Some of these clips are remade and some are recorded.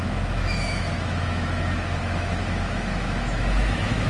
remade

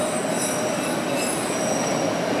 recorded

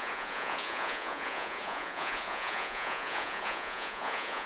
remade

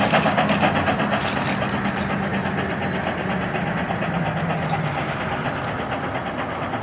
recorded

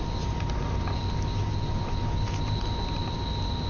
recorded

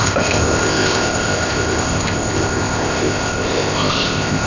remade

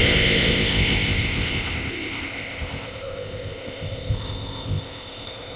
remade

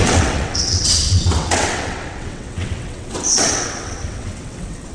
remade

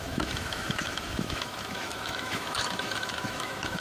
remade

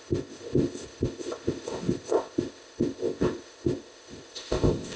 remade